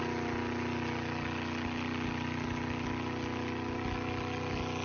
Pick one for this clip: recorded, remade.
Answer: recorded